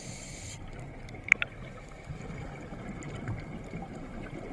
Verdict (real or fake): real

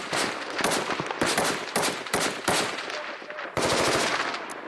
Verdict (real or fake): real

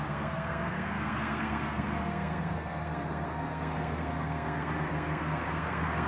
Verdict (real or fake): fake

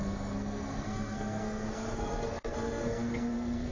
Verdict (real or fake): fake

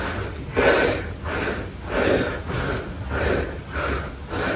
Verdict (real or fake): real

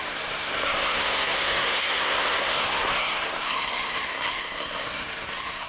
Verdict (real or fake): fake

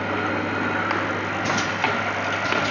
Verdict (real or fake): real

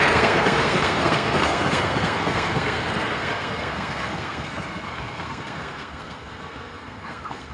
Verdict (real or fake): fake